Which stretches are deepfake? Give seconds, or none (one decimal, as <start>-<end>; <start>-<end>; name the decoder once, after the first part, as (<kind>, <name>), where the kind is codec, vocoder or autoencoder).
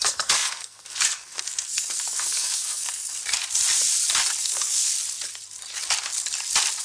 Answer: 0.0-3.2 (codec, SNAC); 4.4-4.9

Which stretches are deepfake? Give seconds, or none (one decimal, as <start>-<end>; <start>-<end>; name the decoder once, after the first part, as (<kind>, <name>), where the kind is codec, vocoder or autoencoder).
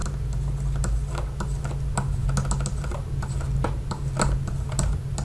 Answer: none